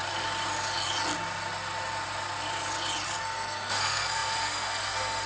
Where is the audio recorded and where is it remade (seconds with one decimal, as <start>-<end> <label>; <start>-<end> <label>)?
0.0-3.2 recorded; 3.2-5.3 remade